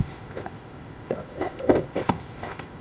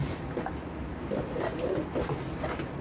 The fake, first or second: first